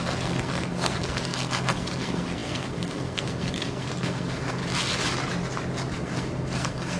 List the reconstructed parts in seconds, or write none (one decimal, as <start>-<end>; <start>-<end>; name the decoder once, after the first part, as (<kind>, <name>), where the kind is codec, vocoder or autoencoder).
0.0-4.6 (codec, SNAC); 5.9-7.0